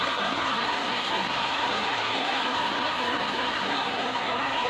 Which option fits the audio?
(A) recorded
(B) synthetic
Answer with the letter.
B